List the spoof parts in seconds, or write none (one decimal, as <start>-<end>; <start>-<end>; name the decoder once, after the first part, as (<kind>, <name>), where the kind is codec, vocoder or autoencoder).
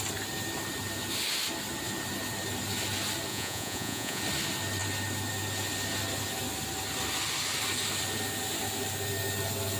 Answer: 3.3-4.2 (vocoder, Vocos)